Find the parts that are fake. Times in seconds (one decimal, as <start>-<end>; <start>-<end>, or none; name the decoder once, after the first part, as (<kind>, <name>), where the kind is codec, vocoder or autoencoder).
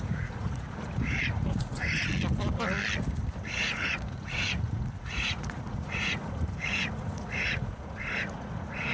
0.0-2.1 (vocoder, Vocos); 3.4-8.9